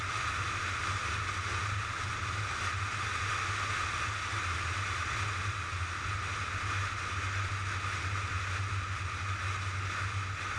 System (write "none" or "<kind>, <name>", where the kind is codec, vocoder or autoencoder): none